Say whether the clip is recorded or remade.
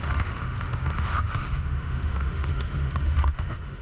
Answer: remade